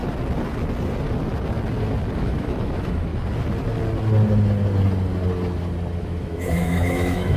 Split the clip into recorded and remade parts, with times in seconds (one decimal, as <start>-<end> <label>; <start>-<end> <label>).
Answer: 0.0-2.2 recorded; 2.2-3.1 remade; 3.1-6.0 recorded; 6.0-7.4 remade